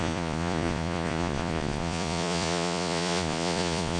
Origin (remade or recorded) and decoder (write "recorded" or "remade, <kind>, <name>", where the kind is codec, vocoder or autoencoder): remade, vocoder, Vocos